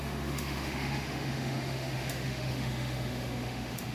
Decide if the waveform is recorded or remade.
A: remade